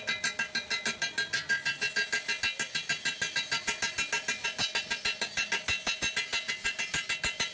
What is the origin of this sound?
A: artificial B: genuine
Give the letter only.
B